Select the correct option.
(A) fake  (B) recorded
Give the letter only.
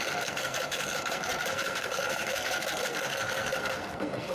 A